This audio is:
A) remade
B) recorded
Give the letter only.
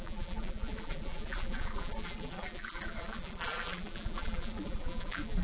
A